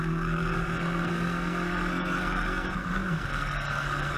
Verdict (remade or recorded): remade